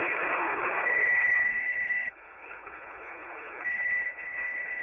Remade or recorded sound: remade